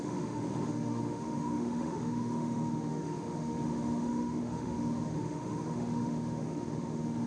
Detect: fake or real fake